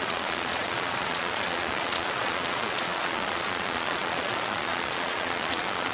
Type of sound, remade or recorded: remade